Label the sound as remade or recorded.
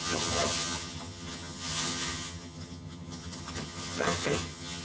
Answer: remade